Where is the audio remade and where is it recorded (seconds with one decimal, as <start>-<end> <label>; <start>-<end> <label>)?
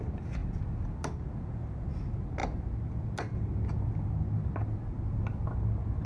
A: 0.0-6.1 recorded